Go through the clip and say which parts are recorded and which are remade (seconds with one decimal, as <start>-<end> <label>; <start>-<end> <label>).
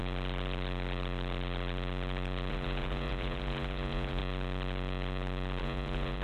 0.0-2.5 recorded; 2.5-4.2 remade; 4.2-5.6 recorded; 5.6-6.2 remade